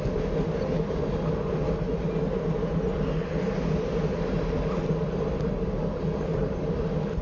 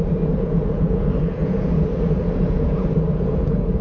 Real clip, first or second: first